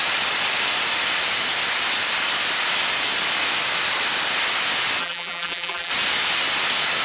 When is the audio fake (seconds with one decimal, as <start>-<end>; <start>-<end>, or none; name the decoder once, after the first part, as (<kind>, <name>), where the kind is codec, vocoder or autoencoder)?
5.0-5.9 (vocoder, BigVGAN v2)